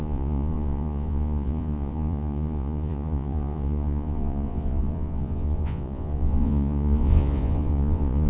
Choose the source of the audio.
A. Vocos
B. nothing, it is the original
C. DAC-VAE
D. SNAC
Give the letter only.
A